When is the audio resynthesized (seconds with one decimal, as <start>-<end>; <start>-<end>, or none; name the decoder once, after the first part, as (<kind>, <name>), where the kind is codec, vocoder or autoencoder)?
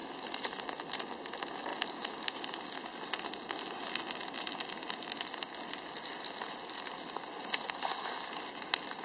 none